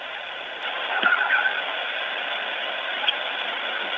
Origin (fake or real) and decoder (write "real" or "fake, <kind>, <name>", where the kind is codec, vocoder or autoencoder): real